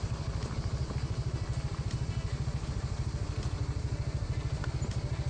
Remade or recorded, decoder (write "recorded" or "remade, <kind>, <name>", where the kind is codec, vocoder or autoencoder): recorded